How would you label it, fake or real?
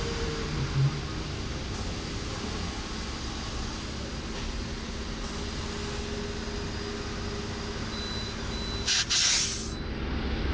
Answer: real